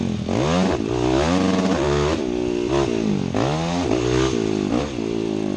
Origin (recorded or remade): recorded